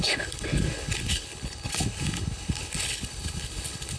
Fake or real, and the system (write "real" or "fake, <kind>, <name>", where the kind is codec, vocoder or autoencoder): fake, codec, HILCodec